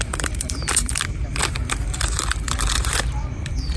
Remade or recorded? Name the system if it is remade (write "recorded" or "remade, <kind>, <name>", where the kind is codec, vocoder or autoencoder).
remade, vocoder, BigVGAN v2